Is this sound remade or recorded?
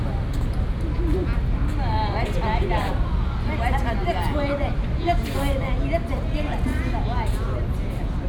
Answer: recorded